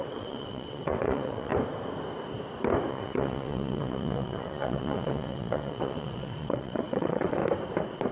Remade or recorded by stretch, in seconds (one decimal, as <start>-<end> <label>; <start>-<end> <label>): 0.0-1.5 remade; 1.5-2.9 recorded; 2.9-7.4 remade; 7.4-8.1 recorded